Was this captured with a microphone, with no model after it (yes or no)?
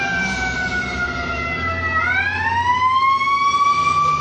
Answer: yes